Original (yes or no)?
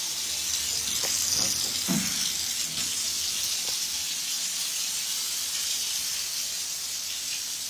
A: yes